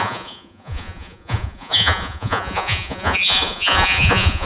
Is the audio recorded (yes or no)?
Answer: no